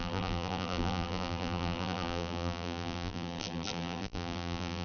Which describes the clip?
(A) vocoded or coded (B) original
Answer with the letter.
A